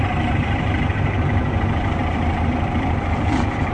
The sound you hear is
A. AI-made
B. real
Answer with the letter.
B